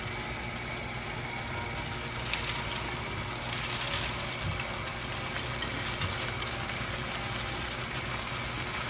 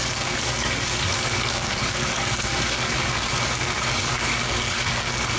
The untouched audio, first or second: first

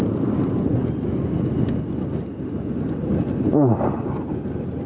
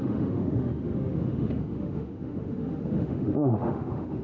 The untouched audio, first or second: first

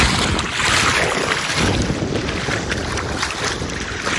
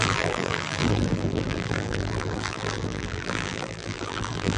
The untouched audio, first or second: first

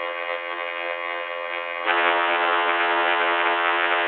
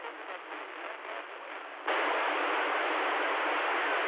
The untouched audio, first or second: second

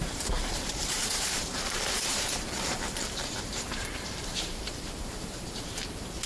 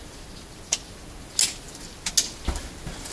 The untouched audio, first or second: second